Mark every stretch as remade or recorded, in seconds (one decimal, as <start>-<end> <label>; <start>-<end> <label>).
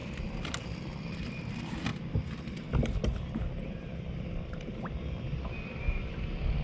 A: 0.0-1.3 remade; 1.3-1.9 recorded; 1.9-5.0 remade; 5.0-6.6 recorded